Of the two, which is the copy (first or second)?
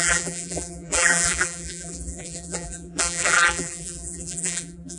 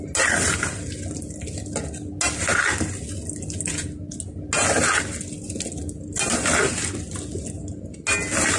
first